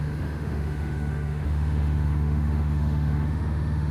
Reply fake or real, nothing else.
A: fake